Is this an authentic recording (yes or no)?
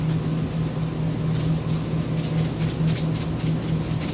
yes